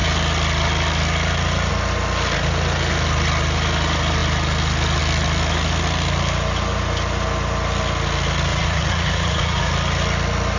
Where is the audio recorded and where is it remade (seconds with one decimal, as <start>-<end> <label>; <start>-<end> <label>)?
0.0-8.5 recorded; 8.5-9.7 remade; 9.7-10.6 recorded